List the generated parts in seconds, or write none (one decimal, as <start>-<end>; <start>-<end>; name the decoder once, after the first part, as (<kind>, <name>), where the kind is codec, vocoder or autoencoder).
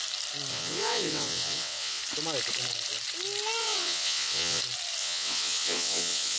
0.5-2.0 (vocoder, WaveNeXt); 3.6-4.6; 5.0-6.4